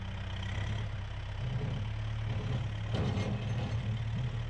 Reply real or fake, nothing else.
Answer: real